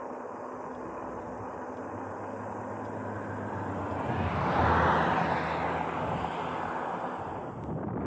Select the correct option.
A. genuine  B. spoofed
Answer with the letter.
A